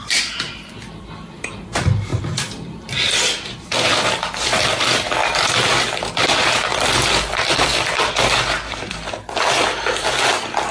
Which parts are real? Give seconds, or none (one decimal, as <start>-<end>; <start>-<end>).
none